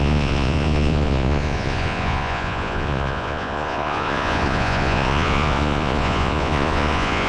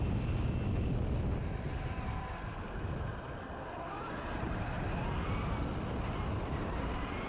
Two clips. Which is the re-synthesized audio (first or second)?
first